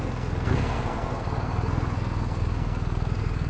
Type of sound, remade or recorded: remade